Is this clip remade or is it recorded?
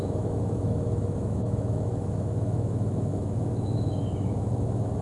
remade